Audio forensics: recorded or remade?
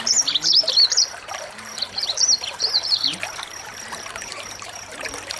remade